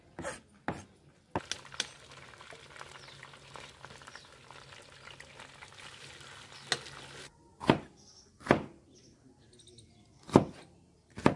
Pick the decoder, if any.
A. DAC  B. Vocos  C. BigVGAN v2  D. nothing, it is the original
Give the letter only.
D